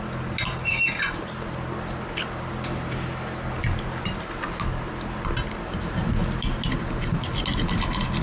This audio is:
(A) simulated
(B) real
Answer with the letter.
B